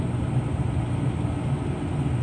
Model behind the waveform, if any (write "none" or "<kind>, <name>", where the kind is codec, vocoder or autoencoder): none